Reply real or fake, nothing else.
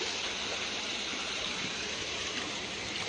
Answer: real